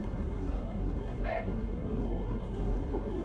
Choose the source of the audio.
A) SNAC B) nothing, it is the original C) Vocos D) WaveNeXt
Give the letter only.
A